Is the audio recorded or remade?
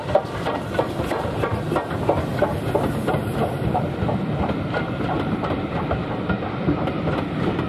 recorded